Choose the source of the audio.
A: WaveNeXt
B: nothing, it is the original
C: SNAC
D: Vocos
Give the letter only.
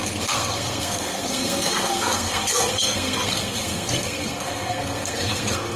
C